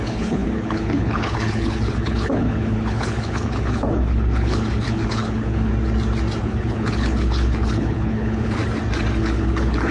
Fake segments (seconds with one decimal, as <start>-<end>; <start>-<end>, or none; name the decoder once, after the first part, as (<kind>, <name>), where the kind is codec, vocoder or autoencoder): 0.0-5.7 (codec, HILCodec); 6.4-8.6; 9.2-9.9